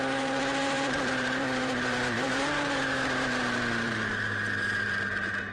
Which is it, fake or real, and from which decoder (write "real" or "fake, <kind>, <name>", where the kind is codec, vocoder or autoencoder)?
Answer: fake, vocoder, BigVGAN v2